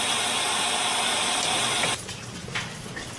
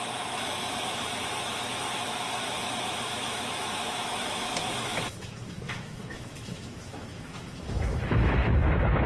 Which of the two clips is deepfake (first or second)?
second